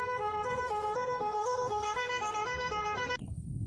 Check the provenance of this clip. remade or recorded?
remade